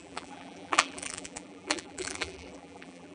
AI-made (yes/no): yes